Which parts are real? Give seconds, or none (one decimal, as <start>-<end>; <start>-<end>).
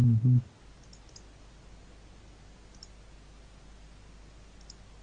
0.0-5.0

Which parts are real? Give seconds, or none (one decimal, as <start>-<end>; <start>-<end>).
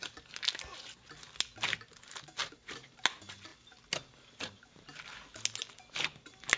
0.0-6.6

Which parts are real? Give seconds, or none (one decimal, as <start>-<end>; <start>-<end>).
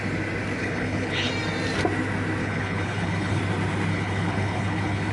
0.0-0.6; 1.3-2.4; 3.4-3.9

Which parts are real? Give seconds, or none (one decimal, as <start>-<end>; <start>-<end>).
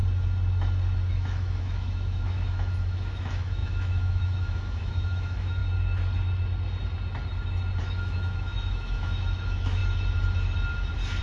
0.0-1.1; 5.6-7.8; 9.8-11.2